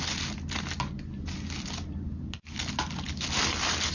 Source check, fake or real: real